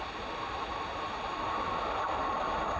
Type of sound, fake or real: real